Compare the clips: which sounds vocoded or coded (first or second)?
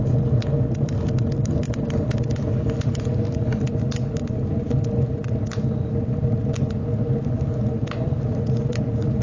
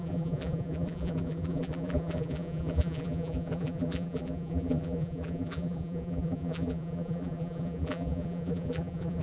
second